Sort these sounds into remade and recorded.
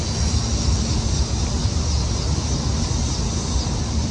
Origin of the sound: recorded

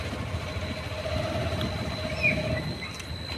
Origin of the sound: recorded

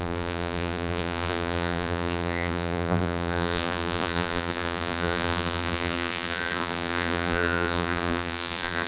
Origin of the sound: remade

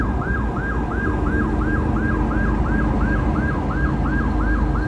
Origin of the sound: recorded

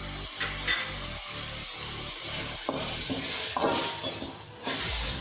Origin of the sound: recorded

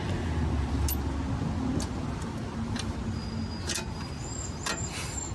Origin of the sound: recorded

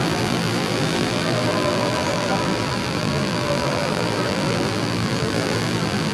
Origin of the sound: remade